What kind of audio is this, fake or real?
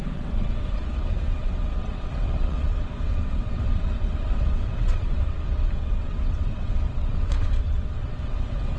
fake